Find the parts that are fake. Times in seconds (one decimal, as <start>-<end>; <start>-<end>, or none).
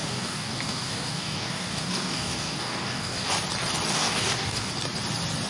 0.0-3.3; 3.9-4.7